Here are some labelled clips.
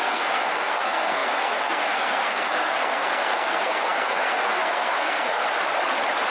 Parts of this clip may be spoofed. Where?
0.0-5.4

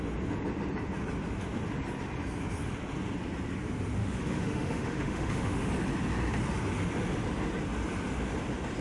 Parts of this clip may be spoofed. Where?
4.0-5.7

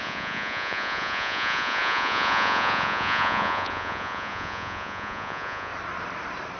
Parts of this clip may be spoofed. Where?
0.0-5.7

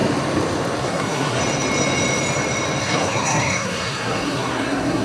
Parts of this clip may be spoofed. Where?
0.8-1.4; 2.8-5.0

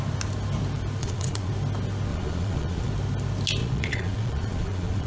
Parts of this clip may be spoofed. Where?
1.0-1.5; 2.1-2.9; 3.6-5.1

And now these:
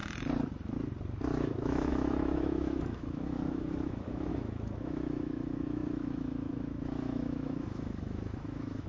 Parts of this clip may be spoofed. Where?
1.4-8.9